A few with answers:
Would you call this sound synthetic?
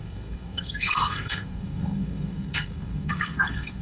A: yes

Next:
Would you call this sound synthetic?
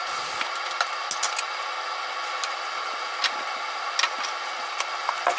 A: no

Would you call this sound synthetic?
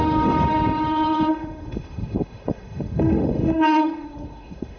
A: yes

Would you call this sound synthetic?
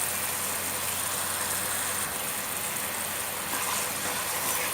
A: no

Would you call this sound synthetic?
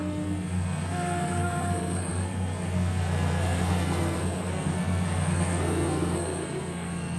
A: yes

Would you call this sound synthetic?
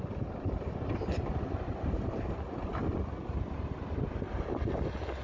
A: no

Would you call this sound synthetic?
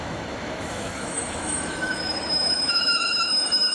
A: yes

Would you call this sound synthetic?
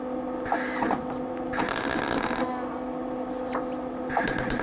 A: no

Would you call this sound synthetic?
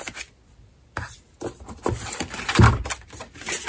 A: no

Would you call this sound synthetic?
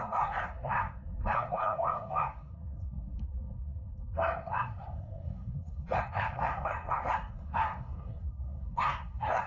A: yes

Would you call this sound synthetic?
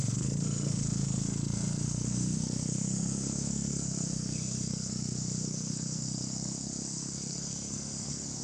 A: yes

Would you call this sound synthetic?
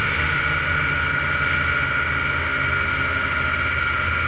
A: no